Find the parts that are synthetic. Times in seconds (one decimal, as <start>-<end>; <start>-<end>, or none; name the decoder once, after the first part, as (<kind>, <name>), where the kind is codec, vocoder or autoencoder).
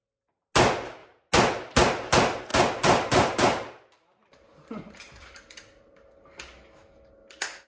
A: none